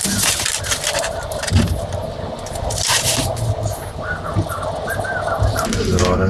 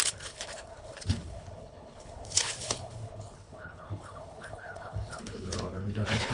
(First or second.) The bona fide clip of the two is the first